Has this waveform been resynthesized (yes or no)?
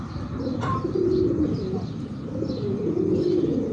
no